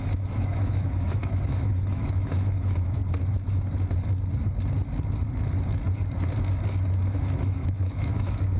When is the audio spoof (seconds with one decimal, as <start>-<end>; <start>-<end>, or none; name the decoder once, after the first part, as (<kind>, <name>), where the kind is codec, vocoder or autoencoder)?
0.0-3.0 (autoencoder, DAC-VAE); 7.2-8.6